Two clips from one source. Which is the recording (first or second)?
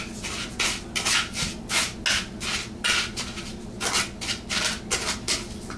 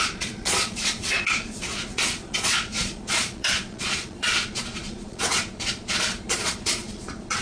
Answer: first